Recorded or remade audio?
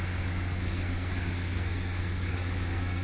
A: remade